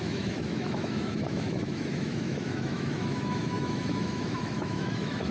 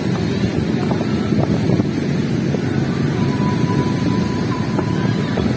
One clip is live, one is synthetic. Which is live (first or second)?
second